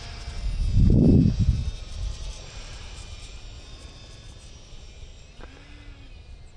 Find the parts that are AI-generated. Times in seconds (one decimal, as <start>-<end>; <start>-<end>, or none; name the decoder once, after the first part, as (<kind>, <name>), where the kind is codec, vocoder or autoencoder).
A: 1.6-5.5 (vocoder, BigVGAN v2)